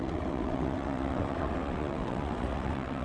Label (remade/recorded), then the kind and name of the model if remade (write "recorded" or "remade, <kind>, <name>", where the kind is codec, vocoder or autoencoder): remade, vocoder, WaveNeXt